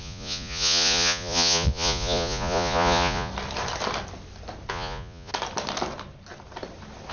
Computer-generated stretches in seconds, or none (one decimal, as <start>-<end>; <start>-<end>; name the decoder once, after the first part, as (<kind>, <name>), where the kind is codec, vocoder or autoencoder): 0.0-3.3 (vocoder, Vocos); 4.7-5.3